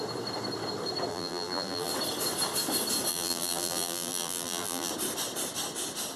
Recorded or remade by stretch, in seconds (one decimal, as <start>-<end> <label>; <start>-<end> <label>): 0.0-1.1 recorded; 1.1-1.9 remade; 1.9-3.1 recorded; 3.1-4.9 remade; 4.9-6.2 recorded